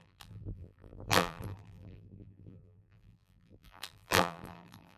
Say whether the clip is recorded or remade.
remade